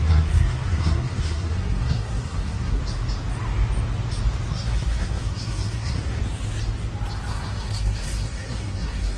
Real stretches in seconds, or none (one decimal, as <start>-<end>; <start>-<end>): 2.8-4.5; 6.2-7.3